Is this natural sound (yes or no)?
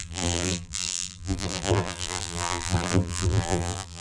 no